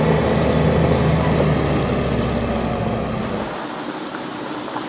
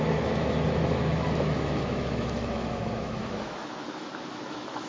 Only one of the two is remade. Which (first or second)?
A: second